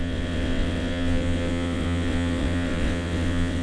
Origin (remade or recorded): remade